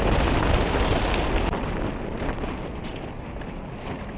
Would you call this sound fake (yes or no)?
no